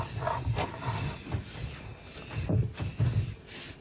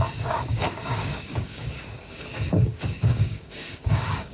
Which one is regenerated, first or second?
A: second